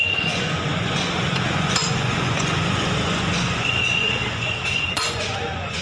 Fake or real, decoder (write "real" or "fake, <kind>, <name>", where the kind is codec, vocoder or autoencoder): fake, vocoder, Vocos